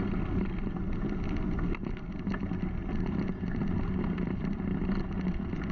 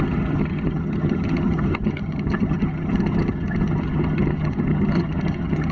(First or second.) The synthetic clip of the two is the second